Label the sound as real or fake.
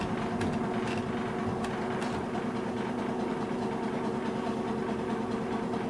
real